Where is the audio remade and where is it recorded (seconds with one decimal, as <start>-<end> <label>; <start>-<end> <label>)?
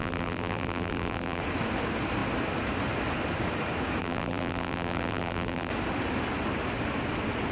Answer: 0.0-1.4 remade; 1.4-4.0 recorded; 4.0-5.7 remade; 5.7-7.5 recorded